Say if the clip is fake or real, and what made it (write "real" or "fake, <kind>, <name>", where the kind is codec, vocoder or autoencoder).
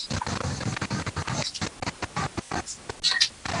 real